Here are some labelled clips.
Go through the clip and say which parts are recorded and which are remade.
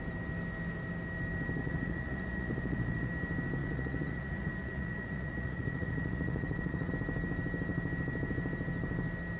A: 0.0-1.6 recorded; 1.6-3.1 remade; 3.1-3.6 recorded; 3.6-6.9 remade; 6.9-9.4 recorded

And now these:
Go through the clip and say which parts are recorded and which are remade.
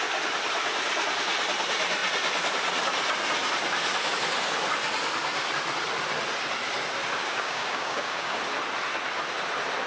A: 0.0-7.2 recorded; 7.2-8.4 remade; 8.4-9.9 recorded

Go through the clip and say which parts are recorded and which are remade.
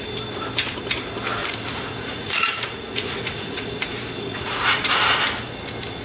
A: 0.0-1.4 recorded; 1.4-3.7 remade; 3.7-4.3 recorded; 4.3-5.0 remade; 5.0-6.0 recorded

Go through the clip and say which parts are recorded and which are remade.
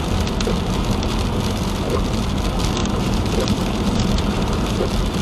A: 0.0-2.8 recorded; 2.8-4.8 remade; 4.8-5.2 recorded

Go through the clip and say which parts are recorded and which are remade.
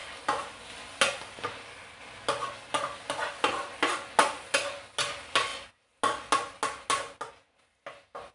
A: 0.0-8.3 recorded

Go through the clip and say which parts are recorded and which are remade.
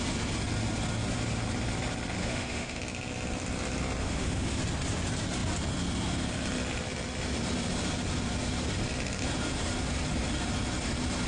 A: 0.0-2.2 recorded; 2.2-2.8 remade; 2.8-4.0 recorded; 4.0-4.6 remade; 4.6-11.3 recorded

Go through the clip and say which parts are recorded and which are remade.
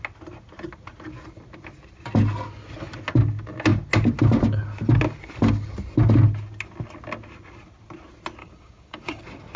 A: 0.0-8.4 recorded; 8.4-9.2 remade; 9.2-9.6 recorded